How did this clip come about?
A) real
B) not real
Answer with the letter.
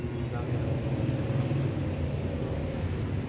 A